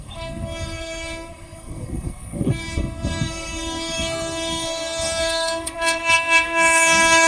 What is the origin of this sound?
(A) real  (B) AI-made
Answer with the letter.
B